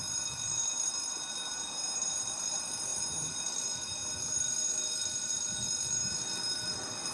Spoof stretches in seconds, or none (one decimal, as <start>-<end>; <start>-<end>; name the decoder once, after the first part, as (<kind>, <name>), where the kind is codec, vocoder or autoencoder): none